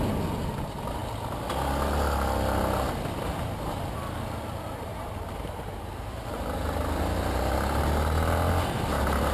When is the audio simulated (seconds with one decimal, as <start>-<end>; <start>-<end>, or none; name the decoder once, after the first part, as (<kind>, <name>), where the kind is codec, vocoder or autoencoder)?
4.9-7.0 (vocoder, BigVGAN v2)